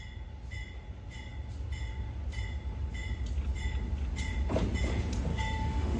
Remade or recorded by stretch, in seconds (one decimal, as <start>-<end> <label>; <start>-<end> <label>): 0.0-5.3 recorded; 5.3-6.0 remade